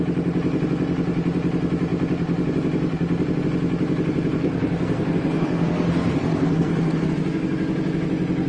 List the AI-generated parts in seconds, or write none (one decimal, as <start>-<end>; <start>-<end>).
4.4-7.1